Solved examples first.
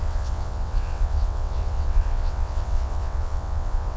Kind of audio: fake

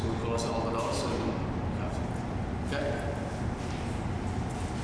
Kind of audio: real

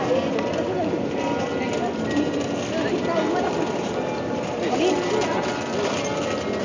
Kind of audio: real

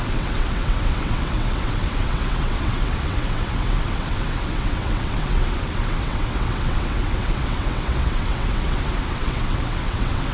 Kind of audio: fake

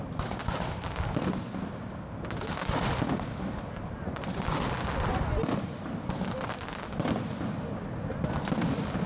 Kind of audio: real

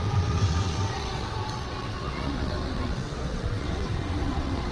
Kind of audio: fake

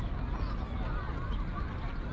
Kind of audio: real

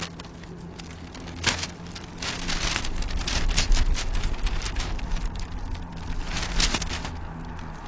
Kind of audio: real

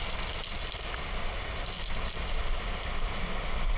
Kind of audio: real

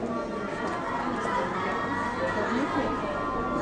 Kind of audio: real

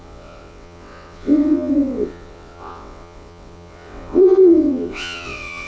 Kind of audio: fake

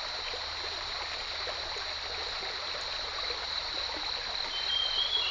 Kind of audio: real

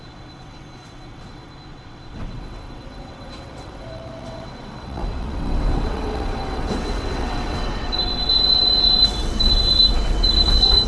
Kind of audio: fake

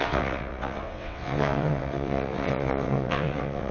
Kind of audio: fake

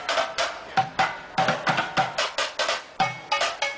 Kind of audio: real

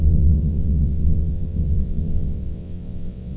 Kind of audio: fake